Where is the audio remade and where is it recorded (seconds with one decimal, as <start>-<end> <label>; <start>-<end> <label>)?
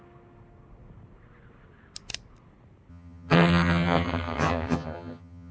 0.0-2.9 recorded; 2.9-5.5 remade